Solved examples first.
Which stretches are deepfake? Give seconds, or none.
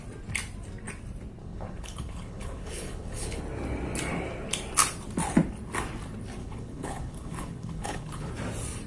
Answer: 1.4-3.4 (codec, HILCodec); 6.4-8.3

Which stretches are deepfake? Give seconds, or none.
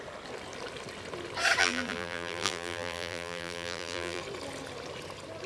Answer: 1.6-4.2 (vocoder, BigVGAN v2)